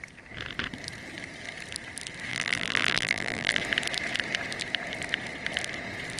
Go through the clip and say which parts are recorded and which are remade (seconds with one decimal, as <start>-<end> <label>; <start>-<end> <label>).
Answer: 0.0-2.3 recorded; 2.3-3.6 remade; 3.6-6.2 recorded